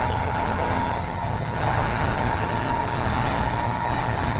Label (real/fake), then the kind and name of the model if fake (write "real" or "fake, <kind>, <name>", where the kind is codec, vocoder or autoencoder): fake, vocoder, HiFi-GAN